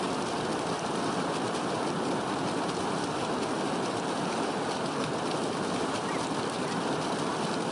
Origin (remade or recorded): recorded